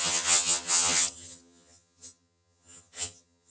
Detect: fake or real fake